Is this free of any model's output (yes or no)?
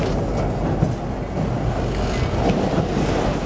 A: yes